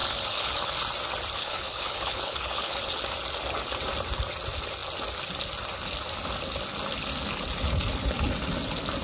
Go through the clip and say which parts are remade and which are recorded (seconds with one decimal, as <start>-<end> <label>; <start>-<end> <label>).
0.0-0.7 remade; 0.7-1.4 recorded; 1.4-3.0 remade; 3.0-9.0 recorded